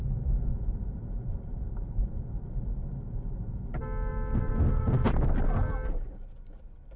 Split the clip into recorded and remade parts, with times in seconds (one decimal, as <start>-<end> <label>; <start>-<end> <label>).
0.0-0.5 recorded; 0.5-2.7 remade; 2.7-7.0 recorded